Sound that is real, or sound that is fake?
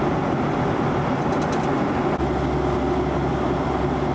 real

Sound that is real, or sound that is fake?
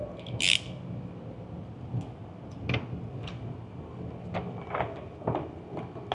real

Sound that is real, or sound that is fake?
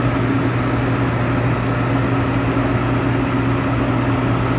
real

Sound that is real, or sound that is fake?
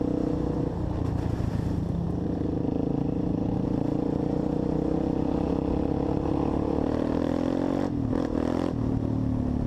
real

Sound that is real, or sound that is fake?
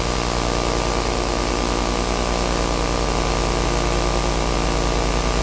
real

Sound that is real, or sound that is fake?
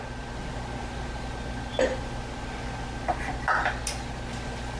real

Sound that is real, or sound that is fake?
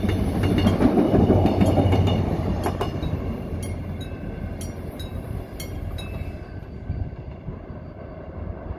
real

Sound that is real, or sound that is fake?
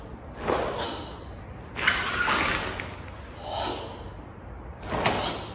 real